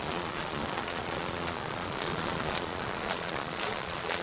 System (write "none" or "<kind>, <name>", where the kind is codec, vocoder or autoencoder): vocoder, Vocos